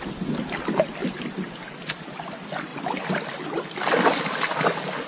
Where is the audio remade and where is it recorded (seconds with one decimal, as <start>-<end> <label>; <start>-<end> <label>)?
0.0-1.0 recorded; 1.0-1.7 remade; 1.7-2.7 recorded; 2.7-3.3 remade; 3.3-5.1 recorded